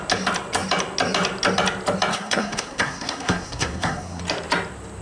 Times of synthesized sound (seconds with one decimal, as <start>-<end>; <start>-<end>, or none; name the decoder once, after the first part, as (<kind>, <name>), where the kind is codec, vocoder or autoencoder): 2.1-4.2 (codec, SNAC)

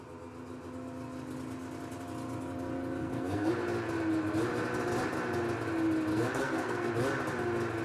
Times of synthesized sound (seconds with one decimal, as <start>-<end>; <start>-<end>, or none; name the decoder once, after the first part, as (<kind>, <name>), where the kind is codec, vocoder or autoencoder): 3.0-3.5 (codec, SNAC); 6.1-6.9

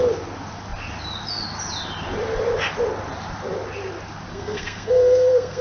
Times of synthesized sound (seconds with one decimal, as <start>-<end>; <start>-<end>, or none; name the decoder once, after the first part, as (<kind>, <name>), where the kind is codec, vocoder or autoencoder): 4.3-5.6 (codec, SNAC)

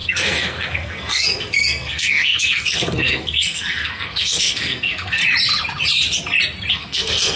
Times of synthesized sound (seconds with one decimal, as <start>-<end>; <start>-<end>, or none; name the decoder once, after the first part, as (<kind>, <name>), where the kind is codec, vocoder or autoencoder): 0.0-5.2 (codec, SNAC); 6.7-7.4